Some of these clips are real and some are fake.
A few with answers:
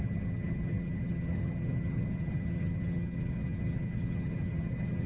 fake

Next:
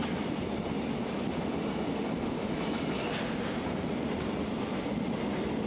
real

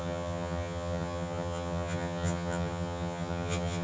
fake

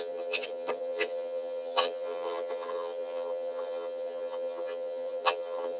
fake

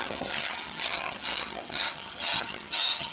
fake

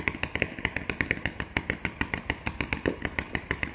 real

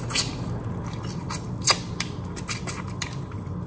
real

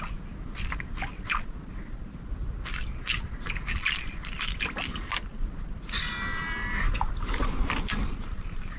real